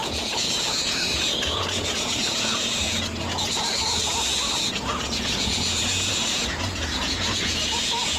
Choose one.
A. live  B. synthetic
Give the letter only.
B